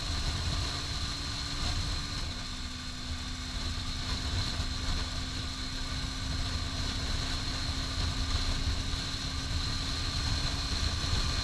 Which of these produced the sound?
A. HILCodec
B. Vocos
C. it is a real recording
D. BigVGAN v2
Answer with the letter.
C